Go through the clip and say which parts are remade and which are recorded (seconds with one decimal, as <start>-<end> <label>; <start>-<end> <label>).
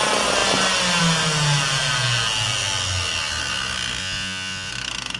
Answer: 0.0-4.0 recorded; 4.0-4.7 remade; 4.7-5.2 recorded